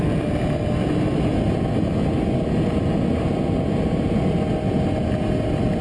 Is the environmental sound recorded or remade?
recorded